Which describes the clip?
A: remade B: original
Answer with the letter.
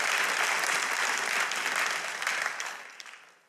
B